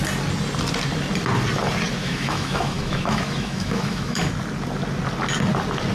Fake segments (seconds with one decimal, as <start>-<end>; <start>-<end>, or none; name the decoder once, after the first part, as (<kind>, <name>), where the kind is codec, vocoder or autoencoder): 2.0-4.3 (autoencoder, DAC-VAE)